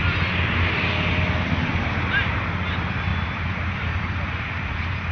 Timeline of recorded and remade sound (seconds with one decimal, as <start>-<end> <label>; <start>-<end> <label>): 0.0-3.1 recorded; 3.1-5.1 remade